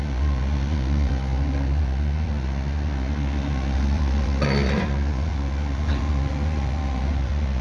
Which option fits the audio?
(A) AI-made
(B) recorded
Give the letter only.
A